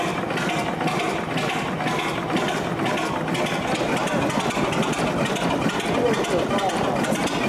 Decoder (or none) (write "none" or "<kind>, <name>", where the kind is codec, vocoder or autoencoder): none